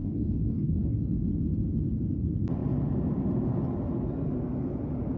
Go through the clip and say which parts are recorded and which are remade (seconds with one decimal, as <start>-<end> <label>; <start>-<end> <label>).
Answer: 0.0-0.9 remade; 0.9-5.2 recorded